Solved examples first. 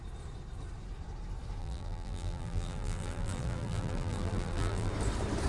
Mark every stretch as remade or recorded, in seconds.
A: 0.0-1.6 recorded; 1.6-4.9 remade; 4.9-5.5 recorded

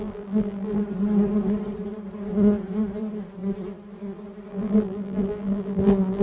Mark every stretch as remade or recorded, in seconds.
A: 0.0-0.8 remade; 0.8-4.5 recorded; 4.5-6.2 remade

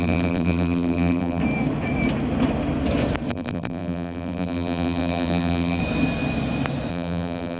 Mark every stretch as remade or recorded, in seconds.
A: 0.0-1.4 remade; 1.4-3.3 recorded; 3.3-5.8 remade; 5.8-6.9 recorded; 6.9-7.6 remade

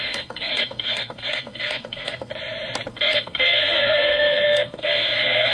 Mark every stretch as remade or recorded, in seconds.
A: 0.0-2.3 remade; 2.3-2.9 recorded; 2.9-5.5 remade

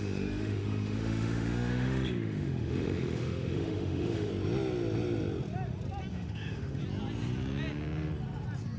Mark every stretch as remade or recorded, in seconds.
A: 0.0-4.3 remade; 4.3-6.1 recorded; 6.1-6.8 remade; 6.8-8.8 recorded

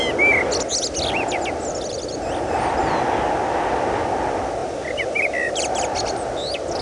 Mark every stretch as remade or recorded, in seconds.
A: 0.0-6.8 recorded

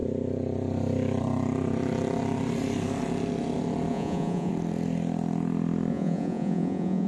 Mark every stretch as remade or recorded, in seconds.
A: 0.0-3.9 recorded; 3.9-4.5 remade; 4.5-5.9 recorded; 5.9-7.1 remade

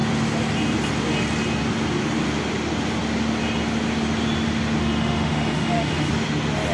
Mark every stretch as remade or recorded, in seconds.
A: 0.0-4.8 recorded; 4.8-6.1 remade; 6.1-6.7 recorded